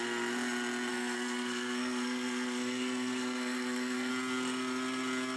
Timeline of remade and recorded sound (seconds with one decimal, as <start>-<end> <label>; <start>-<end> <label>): 0.0-0.9 recorded; 0.9-4.1 remade; 4.1-5.4 recorded